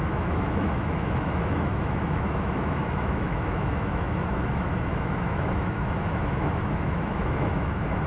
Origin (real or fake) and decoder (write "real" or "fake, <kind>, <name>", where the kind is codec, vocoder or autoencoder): fake, autoencoder, DAC-VAE